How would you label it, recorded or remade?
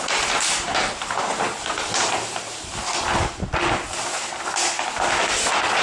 recorded